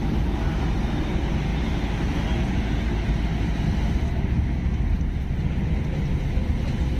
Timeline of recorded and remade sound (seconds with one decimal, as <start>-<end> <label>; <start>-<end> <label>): 0.0-7.0 recorded